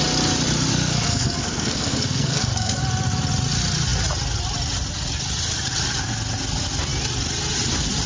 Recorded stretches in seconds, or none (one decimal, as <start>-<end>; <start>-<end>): 0.0-0.7; 2.8-8.1